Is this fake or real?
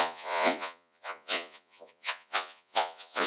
fake